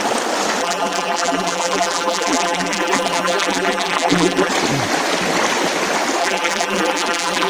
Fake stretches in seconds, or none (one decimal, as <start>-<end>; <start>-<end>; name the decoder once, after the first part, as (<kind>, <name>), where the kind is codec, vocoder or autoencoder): 0.6-4.5 (vocoder, BigVGAN v2); 6.2-7.5